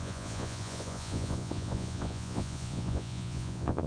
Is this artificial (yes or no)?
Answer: yes